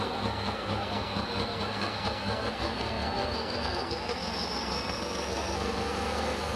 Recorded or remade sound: remade